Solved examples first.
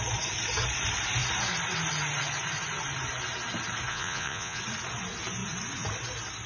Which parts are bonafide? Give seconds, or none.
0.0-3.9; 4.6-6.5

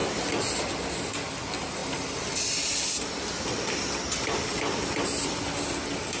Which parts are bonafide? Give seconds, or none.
0.0-6.2